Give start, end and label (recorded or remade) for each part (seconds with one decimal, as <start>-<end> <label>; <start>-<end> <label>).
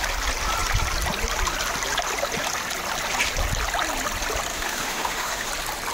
0.0-4.5 recorded; 4.5-5.5 remade; 5.5-5.9 recorded